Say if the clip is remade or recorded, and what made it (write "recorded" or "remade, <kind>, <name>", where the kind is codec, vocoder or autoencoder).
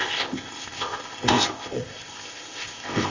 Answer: remade, codec, ZipCodec